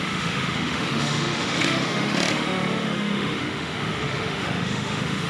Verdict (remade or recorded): remade